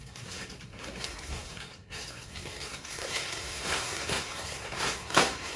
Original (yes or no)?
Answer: no